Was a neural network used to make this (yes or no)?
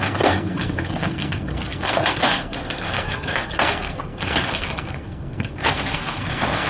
yes